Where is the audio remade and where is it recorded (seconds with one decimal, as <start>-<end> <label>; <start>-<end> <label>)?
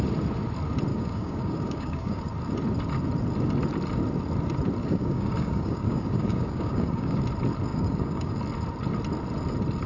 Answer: 0.0-0.9 recorded; 0.9-2.2 remade; 2.2-4.8 recorded; 4.8-7.2 remade; 7.2-7.7 recorded; 7.7-8.3 remade; 8.3-9.9 recorded